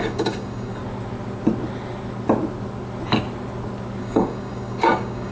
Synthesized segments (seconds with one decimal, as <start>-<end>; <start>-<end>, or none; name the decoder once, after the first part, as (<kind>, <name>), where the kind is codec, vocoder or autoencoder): 0.0-0.8 (codec, DAC); 4.0-5.3